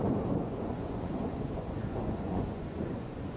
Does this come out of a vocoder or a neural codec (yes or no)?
yes